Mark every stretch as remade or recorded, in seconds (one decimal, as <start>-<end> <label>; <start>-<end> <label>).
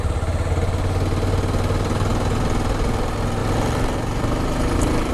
0.0-3.4 recorded; 3.4-5.1 remade